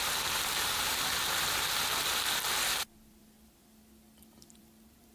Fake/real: fake